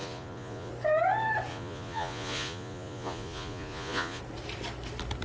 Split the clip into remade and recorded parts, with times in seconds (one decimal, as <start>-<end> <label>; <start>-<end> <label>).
0.0-0.7 remade; 0.7-1.5 recorded; 1.5-4.2 remade; 4.2-5.2 recorded